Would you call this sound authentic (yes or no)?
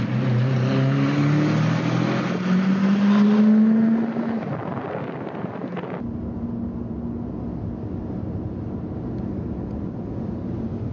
yes